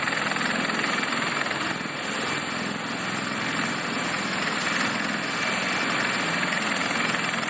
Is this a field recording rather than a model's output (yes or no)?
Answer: yes